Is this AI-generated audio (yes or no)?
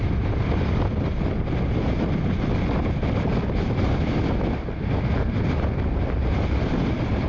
no